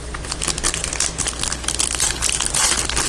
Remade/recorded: recorded